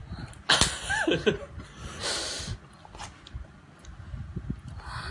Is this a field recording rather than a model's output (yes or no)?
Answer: yes